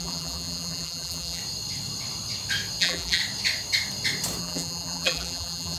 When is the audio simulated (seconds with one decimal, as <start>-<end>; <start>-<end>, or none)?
0.0-1.4; 2.8-3.2; 4.4-5.8